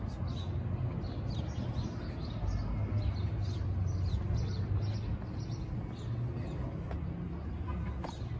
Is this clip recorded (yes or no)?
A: yes